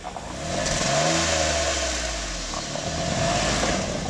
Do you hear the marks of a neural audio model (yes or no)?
no